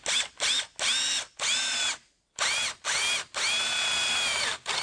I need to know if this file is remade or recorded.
recorded